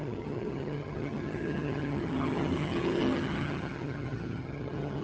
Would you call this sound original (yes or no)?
no